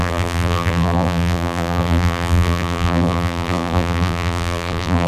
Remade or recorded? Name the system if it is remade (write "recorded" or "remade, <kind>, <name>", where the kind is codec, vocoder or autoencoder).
remade, vocoder, BigVGAN v2